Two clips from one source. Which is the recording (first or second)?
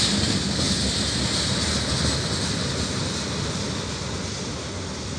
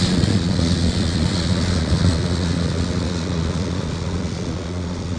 first